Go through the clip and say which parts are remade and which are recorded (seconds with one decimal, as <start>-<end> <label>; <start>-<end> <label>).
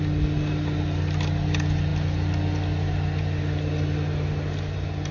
0.0-5.1 recorded